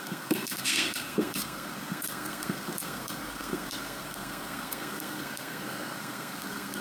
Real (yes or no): no